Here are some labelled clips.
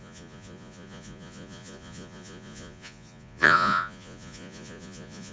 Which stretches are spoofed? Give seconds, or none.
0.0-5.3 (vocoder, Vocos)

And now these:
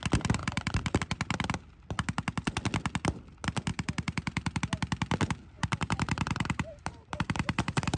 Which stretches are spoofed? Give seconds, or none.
0.4-1.0 (vocoder, BigVGAN v2); 3.7-4.6; 5.6-8.0

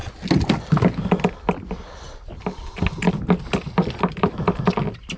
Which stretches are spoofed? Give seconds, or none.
none

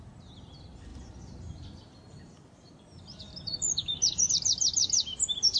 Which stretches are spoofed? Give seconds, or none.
none

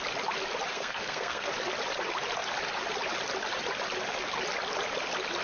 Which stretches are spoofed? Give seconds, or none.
0.7-1.5 (codec, SNAC)

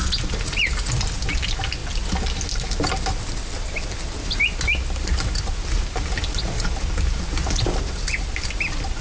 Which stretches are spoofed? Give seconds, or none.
none

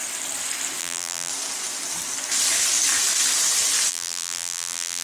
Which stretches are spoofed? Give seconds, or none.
0.8-1.3 (vocoder, BigVGAN v2); 3.9-5.0